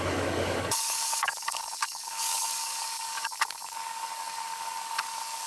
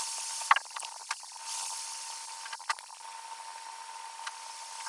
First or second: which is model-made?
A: first